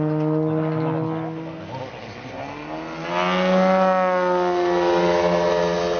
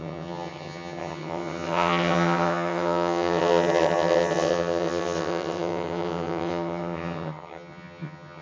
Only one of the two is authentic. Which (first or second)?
first